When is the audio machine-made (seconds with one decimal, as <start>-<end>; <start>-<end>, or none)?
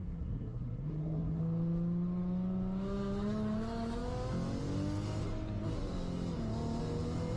0.0-1.4